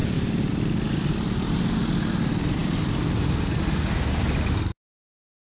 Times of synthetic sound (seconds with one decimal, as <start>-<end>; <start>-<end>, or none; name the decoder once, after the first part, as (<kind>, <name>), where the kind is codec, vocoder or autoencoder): none